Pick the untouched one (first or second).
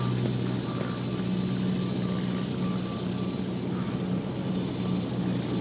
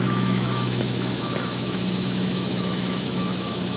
first